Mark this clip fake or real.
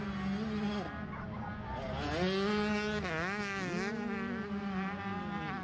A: real